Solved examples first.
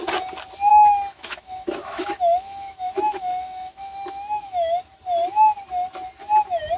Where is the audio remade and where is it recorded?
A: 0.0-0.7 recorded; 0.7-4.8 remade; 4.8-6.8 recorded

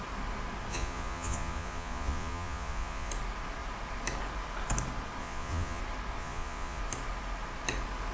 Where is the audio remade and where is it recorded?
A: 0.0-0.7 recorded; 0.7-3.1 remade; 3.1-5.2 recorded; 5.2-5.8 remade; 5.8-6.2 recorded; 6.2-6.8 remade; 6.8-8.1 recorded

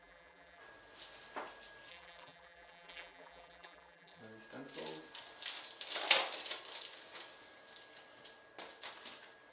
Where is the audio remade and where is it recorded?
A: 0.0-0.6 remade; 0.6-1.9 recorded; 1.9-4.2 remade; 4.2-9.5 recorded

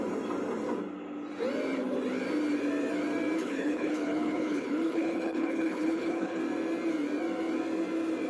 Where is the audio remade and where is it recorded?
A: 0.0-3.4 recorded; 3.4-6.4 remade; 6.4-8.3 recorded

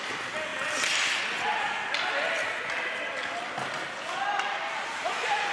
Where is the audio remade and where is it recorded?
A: 0.0-5.5 recorded

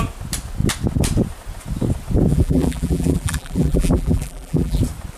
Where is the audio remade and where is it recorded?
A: 0.0-2.3 recorded; 2.3-4.8 remade; 4.8-5.2 recorded

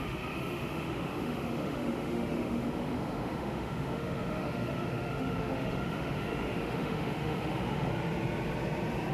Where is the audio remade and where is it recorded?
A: 0.0-7.9 remade; 7.9-9.1 recorded

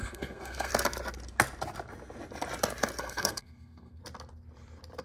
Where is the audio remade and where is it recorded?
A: 0.0-0.7 remade; 0.7-3.0 recorded; 3.0-4.0 remade; 4.0-5.0 recorded